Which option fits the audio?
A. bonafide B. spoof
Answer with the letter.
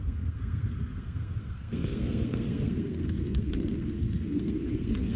B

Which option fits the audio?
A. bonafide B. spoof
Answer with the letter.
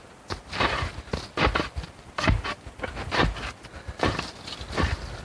A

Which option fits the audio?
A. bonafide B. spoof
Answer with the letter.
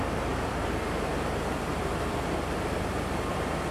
B